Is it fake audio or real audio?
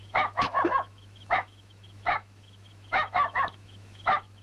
fake